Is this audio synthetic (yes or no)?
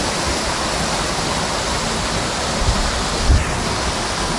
no